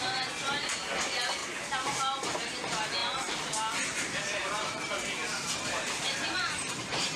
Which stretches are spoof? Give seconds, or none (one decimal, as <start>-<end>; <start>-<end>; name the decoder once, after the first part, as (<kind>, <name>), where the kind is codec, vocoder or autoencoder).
3.0-4.0 (vocoder, BigVGAN v2); 4.4-7.2